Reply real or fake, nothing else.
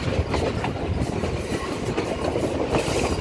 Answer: real